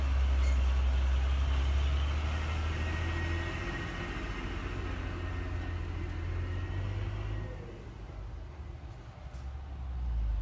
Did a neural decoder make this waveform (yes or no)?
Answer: no